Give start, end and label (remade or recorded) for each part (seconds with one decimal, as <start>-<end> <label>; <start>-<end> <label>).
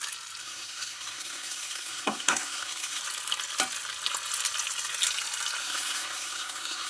0.0-0.4 recorded; 0.4-3.0 remade; 3.0-5.6 recorded; 5.6-6.9 remade